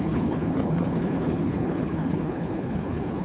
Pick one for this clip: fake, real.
fake